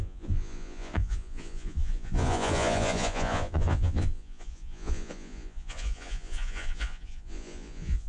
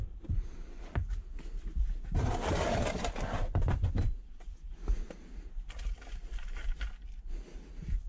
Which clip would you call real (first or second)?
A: second